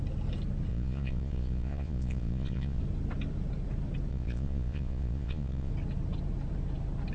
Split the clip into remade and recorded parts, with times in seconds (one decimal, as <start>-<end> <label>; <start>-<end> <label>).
0.0-0.7 recorded; 0.7-2.8 remade; 2.8-4.1 recorded; 4.1-5.7 remade; 5.7-7.1 recorded